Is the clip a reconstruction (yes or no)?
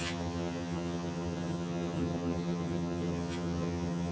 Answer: yes